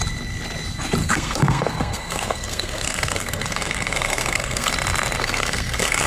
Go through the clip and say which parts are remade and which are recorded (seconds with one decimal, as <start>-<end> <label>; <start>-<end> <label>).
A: 0.0-1.0 recorded; 1.0-4.7 remade; 4.7-5.2 recorded; 5.2-6.1 remade